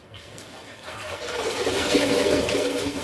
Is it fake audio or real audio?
fake